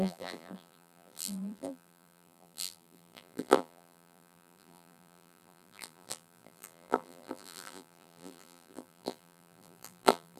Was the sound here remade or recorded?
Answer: remade